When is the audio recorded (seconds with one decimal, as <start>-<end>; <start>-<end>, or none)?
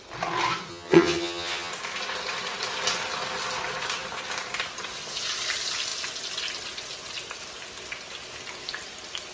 0.0-0.7; 1.7-9.3